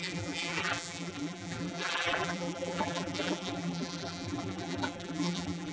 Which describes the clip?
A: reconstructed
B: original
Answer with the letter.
A